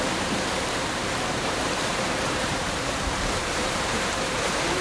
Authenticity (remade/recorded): remade